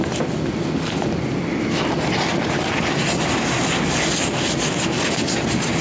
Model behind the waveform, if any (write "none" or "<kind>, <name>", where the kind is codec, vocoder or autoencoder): none